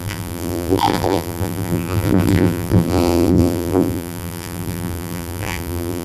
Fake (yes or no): yes